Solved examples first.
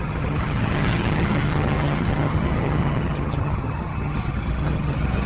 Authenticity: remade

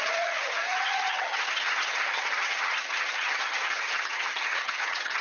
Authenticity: remade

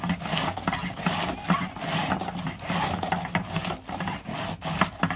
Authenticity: recorded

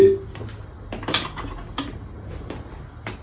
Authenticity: recorded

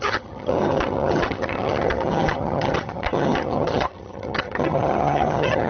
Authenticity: remade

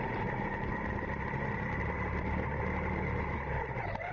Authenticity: recorded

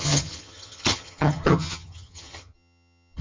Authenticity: remade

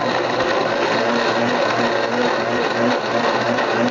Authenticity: recorded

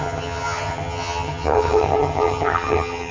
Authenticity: remade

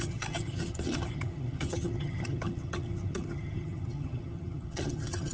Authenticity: remade